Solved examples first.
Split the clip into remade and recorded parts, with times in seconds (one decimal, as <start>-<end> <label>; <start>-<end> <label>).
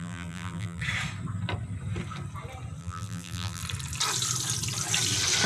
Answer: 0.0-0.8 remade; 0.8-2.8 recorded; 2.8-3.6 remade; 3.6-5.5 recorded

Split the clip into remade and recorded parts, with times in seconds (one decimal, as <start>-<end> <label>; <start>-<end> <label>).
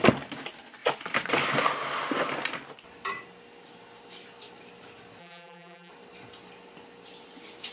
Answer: 0.0-5.2 recorded; 5.2-5.9 remade; 5.9-7.7 recorded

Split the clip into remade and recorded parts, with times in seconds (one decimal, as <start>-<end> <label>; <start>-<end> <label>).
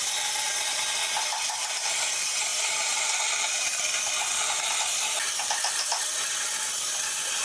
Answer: 0.0-2.5 recorded; 2.5-3.2 remade; 3.2-7.4 recorded